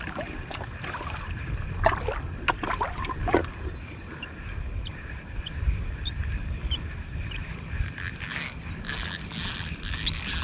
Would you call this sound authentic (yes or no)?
yes